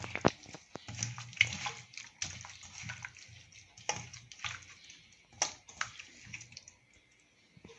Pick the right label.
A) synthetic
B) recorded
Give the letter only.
B